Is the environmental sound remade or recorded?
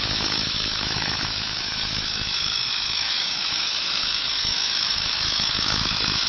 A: remade